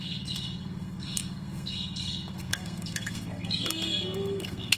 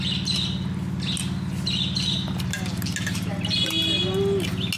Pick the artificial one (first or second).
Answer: first